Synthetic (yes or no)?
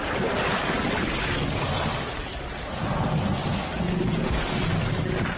no